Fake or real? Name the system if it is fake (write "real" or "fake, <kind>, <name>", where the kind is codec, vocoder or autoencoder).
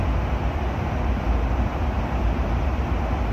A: fake, vocoder, BigVGAN v2